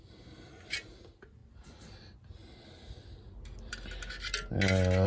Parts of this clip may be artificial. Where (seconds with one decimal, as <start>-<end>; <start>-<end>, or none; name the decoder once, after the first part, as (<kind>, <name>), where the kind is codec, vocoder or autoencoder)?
none